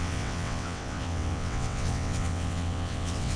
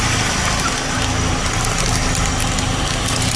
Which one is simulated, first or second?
first